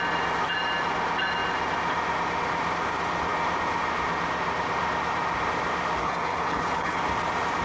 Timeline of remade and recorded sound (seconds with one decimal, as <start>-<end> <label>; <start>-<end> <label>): 0.0-6.0 recorded; 6.0-7.0 remade; 7.0-7.6 recorded